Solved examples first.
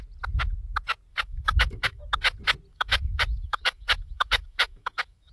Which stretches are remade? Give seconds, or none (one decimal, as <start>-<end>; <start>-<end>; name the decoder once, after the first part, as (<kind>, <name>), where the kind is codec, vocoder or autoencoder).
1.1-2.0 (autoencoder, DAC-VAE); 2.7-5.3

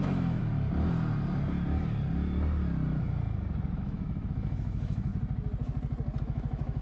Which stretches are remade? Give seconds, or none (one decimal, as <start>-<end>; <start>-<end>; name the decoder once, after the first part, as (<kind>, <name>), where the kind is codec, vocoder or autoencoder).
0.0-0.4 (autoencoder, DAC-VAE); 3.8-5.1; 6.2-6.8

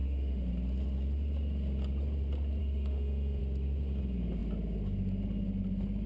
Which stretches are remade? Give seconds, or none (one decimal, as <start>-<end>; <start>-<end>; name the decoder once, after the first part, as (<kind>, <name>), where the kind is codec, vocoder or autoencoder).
0.0-0.5 (autoencoder, DAC-VAE); 2.6-3.4

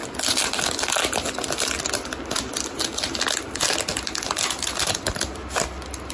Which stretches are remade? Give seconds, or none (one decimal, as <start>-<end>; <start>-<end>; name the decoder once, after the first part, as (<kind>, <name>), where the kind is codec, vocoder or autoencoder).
none

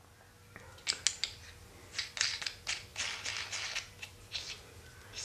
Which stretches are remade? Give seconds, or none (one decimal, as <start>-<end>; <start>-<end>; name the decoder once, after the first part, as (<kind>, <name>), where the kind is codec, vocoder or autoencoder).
none

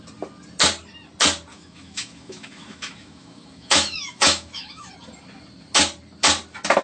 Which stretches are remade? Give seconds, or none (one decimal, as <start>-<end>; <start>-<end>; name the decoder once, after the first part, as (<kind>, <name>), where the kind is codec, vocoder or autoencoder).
1.5-4.9 (autoencoder, DAC-VAE)